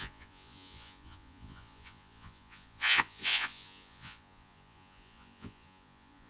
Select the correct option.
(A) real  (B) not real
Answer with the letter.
B